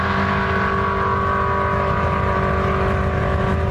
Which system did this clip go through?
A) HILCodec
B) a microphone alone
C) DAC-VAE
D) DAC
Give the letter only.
B